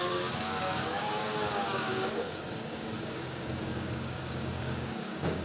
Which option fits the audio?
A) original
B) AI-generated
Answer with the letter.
B